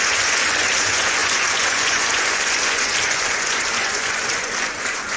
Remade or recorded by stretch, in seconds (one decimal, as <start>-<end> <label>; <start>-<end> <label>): 0.0-5.2 remade